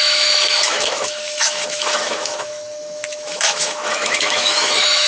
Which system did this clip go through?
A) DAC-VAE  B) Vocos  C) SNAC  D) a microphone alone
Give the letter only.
A